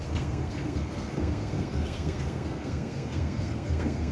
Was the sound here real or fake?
fake